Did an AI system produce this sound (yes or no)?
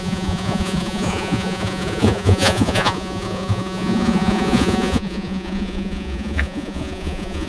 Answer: yes